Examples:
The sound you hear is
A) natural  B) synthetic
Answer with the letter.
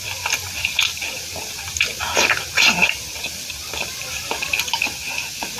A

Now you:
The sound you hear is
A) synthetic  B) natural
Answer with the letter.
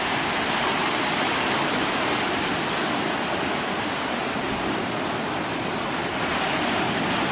B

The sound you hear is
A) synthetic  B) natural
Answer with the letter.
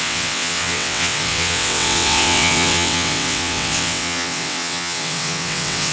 A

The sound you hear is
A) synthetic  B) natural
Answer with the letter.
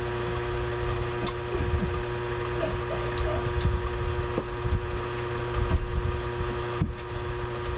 B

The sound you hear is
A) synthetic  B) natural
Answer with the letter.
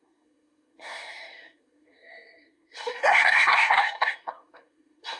A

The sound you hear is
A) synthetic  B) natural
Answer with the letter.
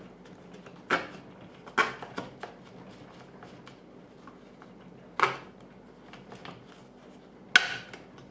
B